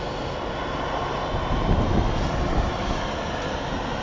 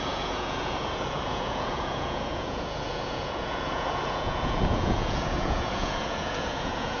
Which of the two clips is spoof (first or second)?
second